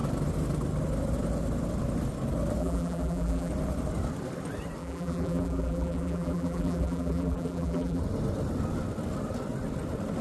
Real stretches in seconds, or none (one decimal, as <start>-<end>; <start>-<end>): 0.0-2.6; 3.5-4.8; 8.0-10.2